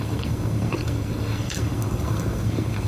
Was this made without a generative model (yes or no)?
no